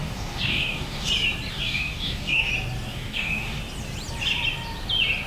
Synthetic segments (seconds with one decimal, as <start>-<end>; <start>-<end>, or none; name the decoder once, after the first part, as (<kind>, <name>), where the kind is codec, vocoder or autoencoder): 0.0-1.1 (codec, DAC); 1.5-2.5; 2.9-3.6